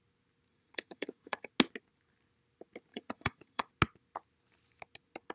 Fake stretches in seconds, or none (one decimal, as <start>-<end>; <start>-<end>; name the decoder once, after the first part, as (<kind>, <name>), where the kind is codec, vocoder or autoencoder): 0.5-1.5 (vocoder, Vocos); 2.9-3.7